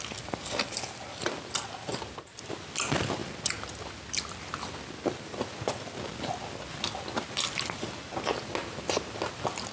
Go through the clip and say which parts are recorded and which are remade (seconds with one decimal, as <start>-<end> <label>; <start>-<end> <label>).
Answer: 0.0-9.7 recorded